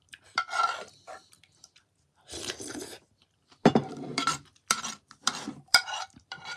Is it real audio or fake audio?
fake